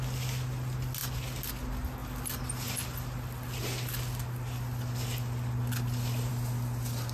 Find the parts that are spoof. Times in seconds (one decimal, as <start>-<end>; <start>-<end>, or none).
none